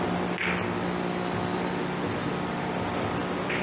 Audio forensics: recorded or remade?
recorded